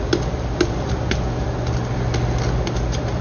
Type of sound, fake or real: real